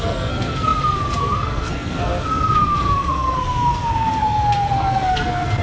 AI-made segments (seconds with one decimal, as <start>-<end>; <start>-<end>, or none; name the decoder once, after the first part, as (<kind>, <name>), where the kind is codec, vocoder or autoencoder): 0.0-5.6 (codec, SNAC)